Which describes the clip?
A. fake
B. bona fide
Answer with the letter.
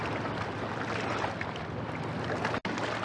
B